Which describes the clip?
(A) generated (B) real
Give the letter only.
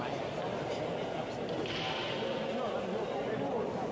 B